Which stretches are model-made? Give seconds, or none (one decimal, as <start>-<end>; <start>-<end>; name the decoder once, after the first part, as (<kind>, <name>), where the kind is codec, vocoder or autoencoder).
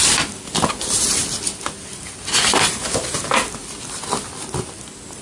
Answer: none